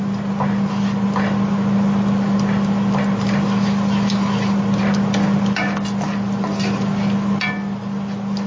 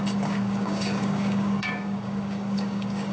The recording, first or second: first